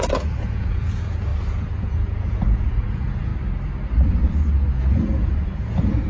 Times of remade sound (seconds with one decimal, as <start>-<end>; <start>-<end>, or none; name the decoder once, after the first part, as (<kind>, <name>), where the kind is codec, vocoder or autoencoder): 0.0-1.3 (vocoder, Vocos); 1.8-3.3; 4.7-6.1